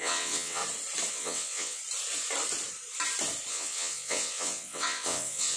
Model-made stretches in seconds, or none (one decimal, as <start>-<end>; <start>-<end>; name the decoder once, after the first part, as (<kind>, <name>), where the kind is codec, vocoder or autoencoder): 0.0-0.6 (vocoder, WaveNeXt); 1.1-1.8; 3.5-5.6